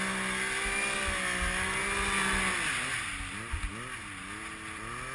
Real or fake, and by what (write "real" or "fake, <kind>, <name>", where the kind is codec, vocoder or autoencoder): real